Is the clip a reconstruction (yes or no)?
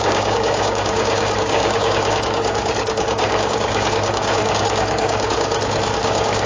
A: yes